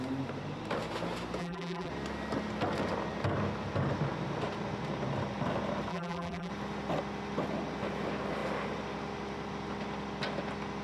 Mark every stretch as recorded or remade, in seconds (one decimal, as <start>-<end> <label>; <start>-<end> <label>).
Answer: 0.0-1.4 recorded; 1.4-1.9 remade; 1.9-5.9 recorded; 5.9-6.5 remade; 6.5-10.8 recorded